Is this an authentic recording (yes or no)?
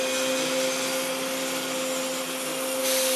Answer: yes